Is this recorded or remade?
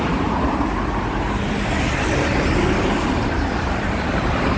recorded